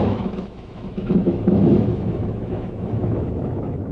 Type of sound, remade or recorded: remade